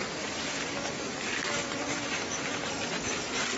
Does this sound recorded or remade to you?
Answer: remade